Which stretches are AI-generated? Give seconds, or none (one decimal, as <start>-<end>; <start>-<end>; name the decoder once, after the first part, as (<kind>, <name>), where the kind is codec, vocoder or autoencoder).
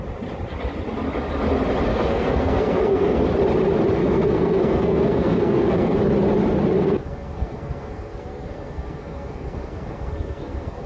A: 1.9-3.2 (codec, SNAC); 4.0-6.0; 6.8-10.9